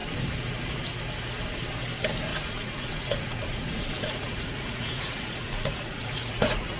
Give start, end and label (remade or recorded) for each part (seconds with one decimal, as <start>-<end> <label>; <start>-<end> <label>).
0.0-2.3 recorded; 2.3-6.8 remade